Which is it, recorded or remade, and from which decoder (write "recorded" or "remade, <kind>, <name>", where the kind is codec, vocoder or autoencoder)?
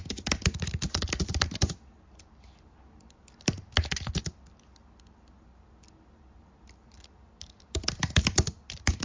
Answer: recorded